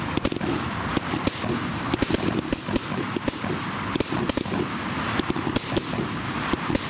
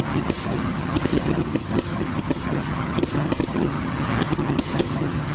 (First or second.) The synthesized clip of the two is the second